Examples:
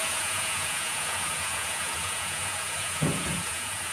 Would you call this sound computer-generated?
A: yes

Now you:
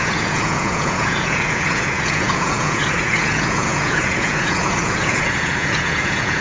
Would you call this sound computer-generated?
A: yes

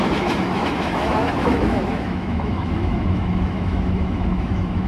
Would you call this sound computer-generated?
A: yes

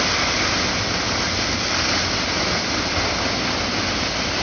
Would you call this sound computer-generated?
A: no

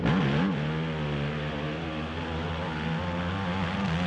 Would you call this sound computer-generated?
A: no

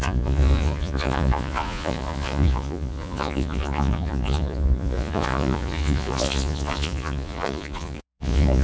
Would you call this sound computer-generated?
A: yes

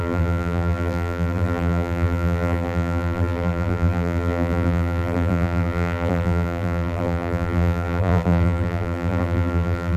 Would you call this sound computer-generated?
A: yes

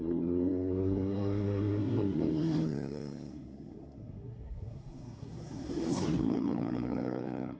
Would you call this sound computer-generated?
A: yes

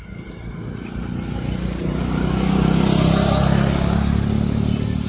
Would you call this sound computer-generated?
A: no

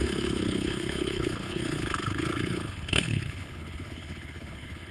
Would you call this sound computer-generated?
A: yes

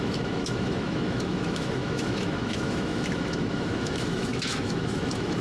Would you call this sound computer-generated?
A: yes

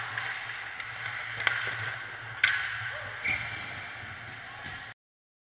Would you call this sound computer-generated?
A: no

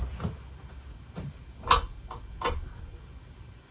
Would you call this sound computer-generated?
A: no